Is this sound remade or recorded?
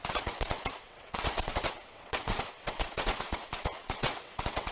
remade